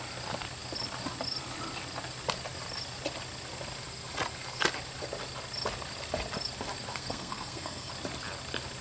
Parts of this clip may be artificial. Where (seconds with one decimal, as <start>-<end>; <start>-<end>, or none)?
6.9-7.9